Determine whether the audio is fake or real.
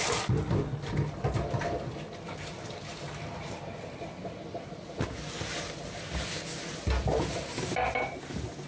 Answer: real